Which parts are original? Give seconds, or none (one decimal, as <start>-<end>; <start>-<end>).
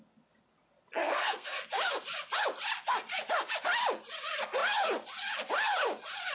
0.0-1.0; 1.6-6.3